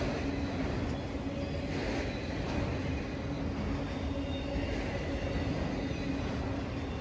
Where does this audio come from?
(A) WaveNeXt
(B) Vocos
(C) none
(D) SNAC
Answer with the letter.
C